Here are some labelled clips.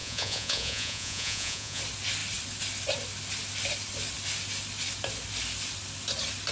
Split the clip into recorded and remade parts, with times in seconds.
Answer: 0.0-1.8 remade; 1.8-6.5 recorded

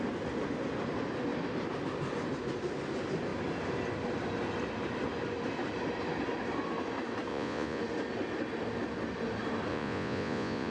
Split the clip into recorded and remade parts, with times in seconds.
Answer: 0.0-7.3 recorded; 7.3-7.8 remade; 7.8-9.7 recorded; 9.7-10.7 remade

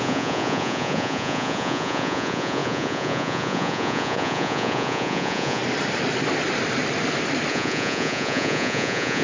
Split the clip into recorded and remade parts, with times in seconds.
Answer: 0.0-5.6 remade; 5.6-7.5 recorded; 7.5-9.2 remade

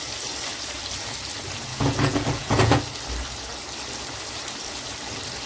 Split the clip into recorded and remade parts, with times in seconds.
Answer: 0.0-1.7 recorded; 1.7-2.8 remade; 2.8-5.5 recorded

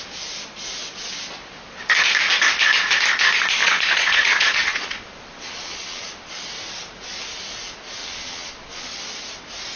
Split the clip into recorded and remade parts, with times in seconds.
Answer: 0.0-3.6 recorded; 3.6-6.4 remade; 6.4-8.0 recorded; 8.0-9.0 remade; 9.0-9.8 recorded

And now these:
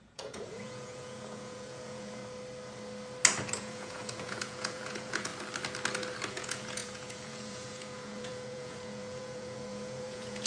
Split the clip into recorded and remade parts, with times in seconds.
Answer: 0.0-2.2 remade; 2.2-3.6 recorded; 3.6-5.3 remade; 5.3-6.3 recorded; 6.3-10.5 remade

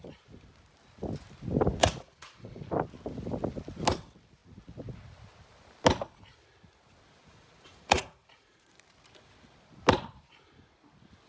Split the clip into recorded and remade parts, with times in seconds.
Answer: 0.0-1.8 recorded; 1.8-2.6 remade; 2.6-7.2 recorded; 7.2-8.7 remade; 8.7-11.3 recorded

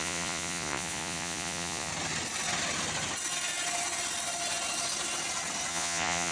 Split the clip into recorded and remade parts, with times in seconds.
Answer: 0.0-1.9 remade; 1.9-5.7 recorded; 5.7-6.3 remade